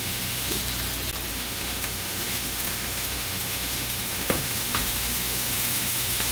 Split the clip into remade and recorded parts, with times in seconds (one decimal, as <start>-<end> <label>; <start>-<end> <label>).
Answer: 0.0-0.6 remade; 0.6-1.3 recorded; 1.3-6.3 remade